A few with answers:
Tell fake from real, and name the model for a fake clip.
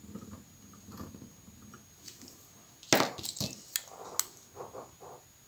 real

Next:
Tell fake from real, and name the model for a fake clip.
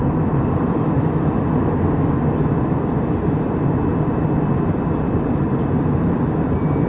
real